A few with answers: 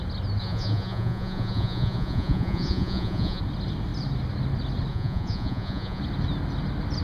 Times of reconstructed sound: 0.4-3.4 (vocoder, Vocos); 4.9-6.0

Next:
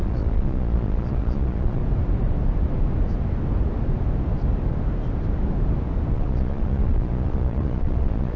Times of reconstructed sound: 0.0-1.8 (vocoder, Vocos); 6.1-8.4

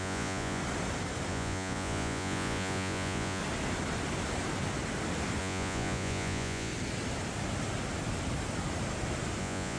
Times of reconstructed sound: 0.0-0.6 (vocoder, Vocos); 1.3-3.4; 5.4-6.7; 9.4-9.8

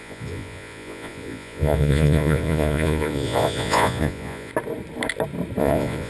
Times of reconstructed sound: 0.0-4.5 (vocoder, Vocos); 5.6-6.1

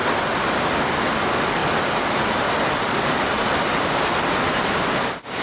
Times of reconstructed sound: none

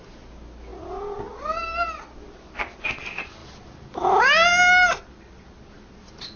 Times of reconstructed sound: none